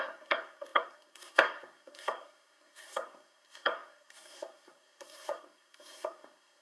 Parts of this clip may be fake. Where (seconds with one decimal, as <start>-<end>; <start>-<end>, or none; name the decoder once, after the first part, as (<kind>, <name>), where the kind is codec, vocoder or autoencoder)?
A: 0.0-6.6 (codec, SNAC)